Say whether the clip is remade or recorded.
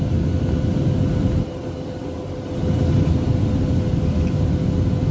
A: recorded